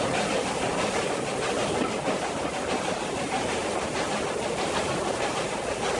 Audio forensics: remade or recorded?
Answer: recorded